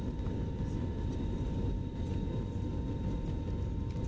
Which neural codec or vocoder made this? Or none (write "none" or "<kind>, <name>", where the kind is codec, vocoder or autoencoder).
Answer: none